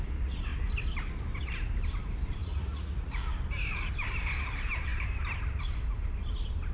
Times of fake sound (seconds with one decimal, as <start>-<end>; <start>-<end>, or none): 2.4-3.3

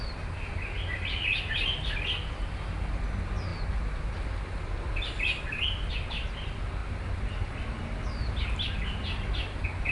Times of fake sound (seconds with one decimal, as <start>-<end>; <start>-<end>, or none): none

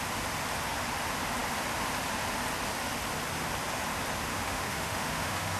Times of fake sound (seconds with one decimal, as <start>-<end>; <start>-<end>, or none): 4.3-5.6

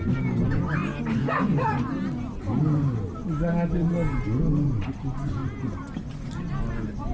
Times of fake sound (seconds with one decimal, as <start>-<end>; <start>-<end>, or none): none

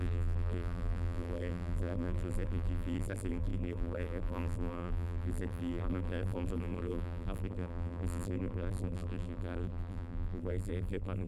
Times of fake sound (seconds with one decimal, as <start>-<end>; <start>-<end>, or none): 0.0-11.3